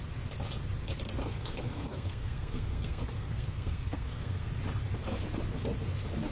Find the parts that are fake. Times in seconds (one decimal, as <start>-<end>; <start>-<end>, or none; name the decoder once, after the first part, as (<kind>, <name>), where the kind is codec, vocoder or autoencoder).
1.2-4.5 (codec, SNAC)